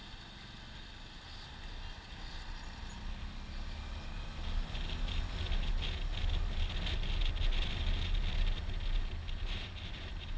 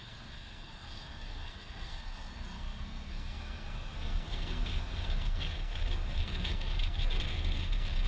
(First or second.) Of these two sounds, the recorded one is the first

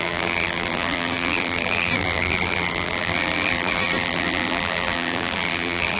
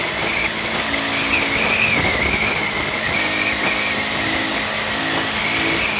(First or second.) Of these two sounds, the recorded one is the second